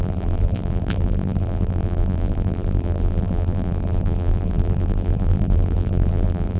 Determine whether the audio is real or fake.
fake